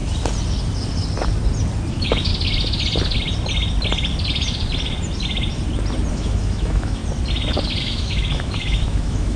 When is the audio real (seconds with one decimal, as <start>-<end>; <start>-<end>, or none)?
0.0-1.9; 2.3-6.1; 7.0-7.8